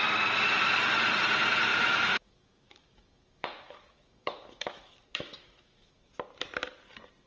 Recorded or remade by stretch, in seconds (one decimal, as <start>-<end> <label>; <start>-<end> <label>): 0.0-1.7 recorded; 1.7-6.1 remade; 6.1-7.3 recorded